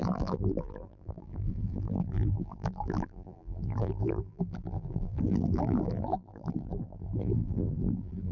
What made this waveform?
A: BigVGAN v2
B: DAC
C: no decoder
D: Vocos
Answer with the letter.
A